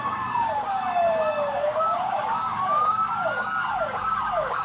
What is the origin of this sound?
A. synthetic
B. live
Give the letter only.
A